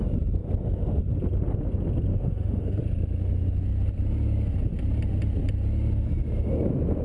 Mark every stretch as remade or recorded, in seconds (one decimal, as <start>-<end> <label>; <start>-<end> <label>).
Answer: 0.0-2.1 recorded; 2.1-2.8 remade; 2.8-7.0 recorded